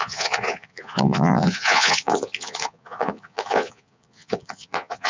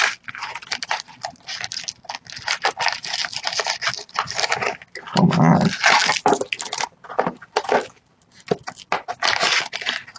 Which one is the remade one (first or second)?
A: first